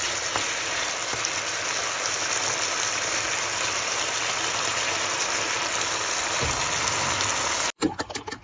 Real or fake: real